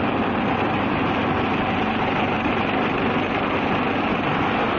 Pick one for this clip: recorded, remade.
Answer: recorded